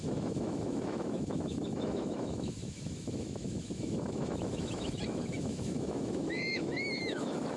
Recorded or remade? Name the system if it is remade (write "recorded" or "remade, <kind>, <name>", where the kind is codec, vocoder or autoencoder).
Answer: remade, autoencoder, DAC-VAE